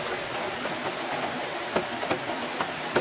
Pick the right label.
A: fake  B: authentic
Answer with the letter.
B